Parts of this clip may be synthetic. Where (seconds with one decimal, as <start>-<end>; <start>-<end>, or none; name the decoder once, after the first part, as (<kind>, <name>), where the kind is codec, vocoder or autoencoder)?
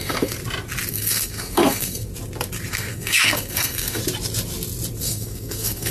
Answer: 0.0-0.4 (codec, SNAC); 0.9-2.1; 2.7-4.0; 5.0-5.9